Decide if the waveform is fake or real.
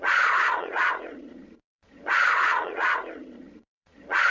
fake